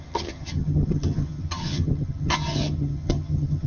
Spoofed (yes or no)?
yes